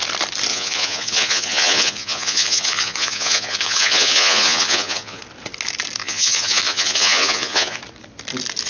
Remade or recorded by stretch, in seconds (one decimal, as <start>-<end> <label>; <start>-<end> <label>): 0.0-0.5 recorded; 0.5-5.2 remade; 5.2-6.0 recorded; 6.0-7.8 remade; 7.8-8.7 recorded